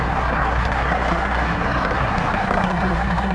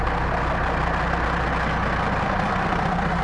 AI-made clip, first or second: first